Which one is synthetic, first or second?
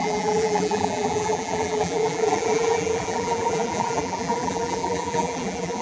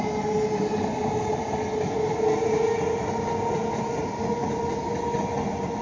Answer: first